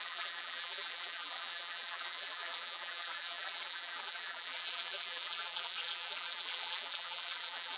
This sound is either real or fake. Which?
fake